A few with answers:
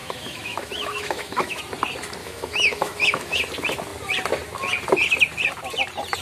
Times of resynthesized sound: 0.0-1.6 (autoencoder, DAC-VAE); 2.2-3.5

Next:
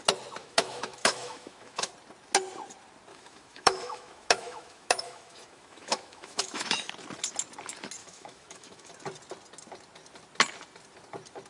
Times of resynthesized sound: 0.4-1.9 (autoencoder, DAC-VAE); 3.1-6.9; 8.0-8.9

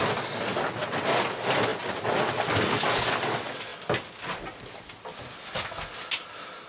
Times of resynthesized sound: none

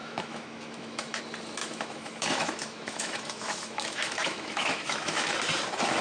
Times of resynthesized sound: 0.0-1.2 (autoencoder, DAC-VAE); 1.6-5.2

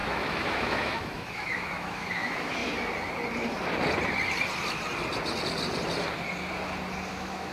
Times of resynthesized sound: 0.0-2.6 (autoencoder, DAC-VAE); 7.1-7.5

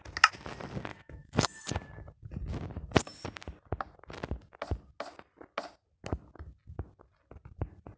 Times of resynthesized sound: 0.9-1.6 (autoencoder, DAC-VAE)